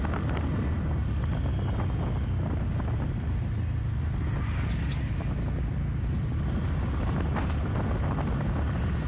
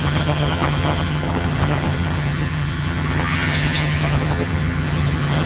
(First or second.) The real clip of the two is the first